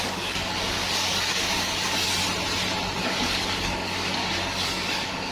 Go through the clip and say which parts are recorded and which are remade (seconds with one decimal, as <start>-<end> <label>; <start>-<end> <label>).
0.0-2.2 remade; 2.2-3.0 recorded; 3.0-5.3 remade